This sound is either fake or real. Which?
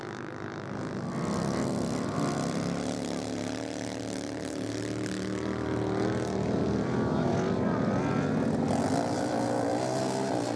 real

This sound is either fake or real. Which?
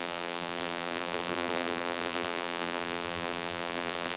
fake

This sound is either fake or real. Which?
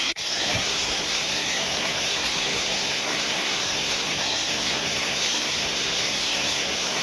fake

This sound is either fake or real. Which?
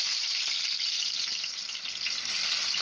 real